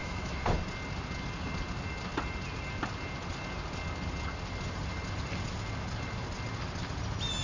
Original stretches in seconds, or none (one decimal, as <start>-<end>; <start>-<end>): 0.5-7.4